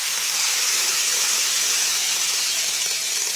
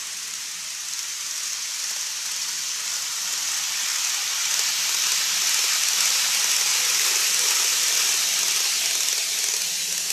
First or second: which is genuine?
second